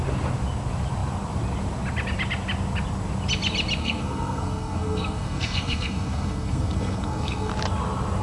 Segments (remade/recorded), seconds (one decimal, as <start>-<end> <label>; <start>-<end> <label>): 0.0-3.8 recorded; 3.8-7.5 remade; 7.5-8.2 recorded

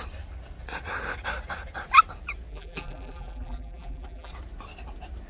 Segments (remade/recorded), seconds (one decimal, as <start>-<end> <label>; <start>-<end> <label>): 0.0-2.5 recorded; 2.5-4.3 remade; 4.3-5.3 recorded

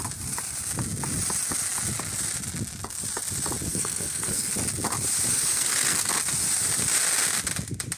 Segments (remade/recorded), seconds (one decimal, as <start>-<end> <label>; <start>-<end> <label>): 0.0-3.7 recorded; 3.7-4.5 remade; 4.5-5.3 recorded; 5.3-6.1 remade; 6.1-8.0 recorded

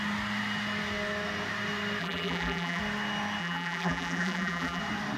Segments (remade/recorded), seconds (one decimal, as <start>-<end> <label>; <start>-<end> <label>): 0.0-2.0 recorded; 2.0-2.8 remade; 2.8-3.4 recorded; 3.4-4.8 remade; 4.8-5.2 recorded

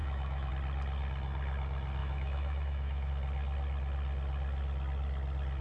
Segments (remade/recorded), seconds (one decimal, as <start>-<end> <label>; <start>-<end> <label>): 0.0-0.5 remade; 0.5-2.0 recorded; 2.0-3.1 remade; 3.1-5.6 recorded

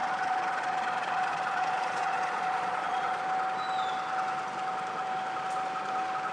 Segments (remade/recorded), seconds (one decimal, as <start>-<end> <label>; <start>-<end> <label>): 0.0-3.2 remade; 3.2-6.3 recorded